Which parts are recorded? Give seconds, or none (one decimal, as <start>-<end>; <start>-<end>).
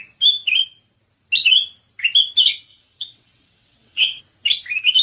0.0-2.7; 4.2-5.0